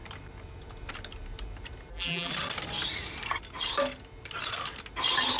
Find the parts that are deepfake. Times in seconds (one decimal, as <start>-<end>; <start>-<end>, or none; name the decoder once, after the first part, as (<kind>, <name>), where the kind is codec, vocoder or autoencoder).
1.9-2.3 (vocoder, BigVGAN v2)